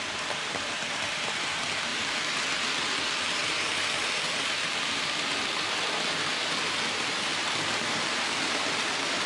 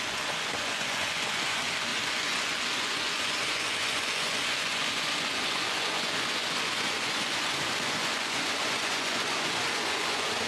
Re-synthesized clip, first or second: second